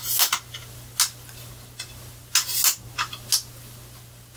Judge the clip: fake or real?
real